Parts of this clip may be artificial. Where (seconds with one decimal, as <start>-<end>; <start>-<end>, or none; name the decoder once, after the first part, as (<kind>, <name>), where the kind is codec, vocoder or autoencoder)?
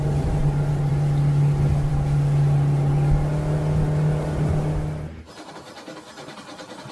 none